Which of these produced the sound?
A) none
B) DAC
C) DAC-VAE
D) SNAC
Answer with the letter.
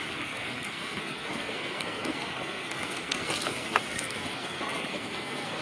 D